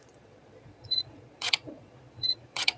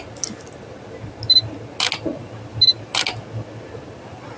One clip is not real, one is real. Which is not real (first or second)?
first